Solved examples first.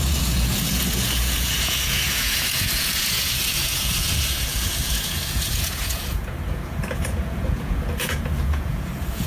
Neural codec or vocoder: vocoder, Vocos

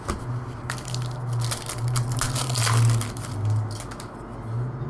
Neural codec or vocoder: none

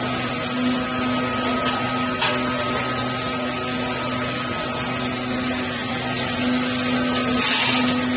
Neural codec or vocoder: none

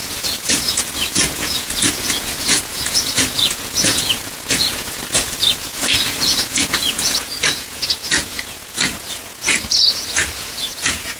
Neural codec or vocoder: vocoder, Vocos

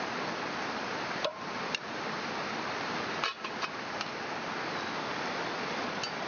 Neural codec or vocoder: none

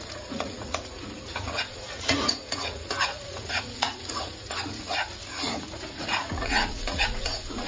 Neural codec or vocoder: vocoder, Vocos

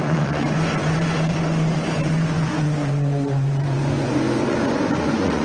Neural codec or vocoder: vocoder, Vocos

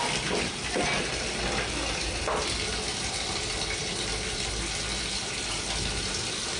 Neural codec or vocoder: none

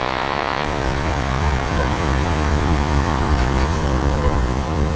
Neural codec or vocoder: vocoder, Vocos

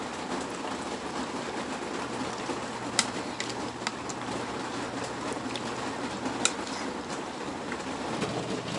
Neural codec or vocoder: none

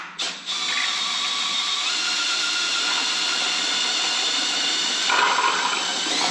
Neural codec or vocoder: none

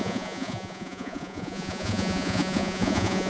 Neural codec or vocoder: vocoder, Vocos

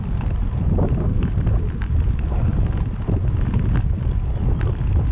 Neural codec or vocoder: none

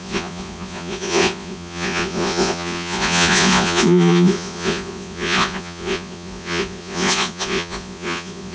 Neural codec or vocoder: vocoder, Vocos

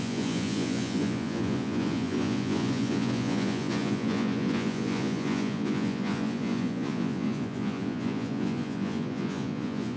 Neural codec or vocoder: vocoder, Vocos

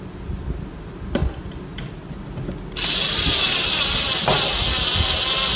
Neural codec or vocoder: none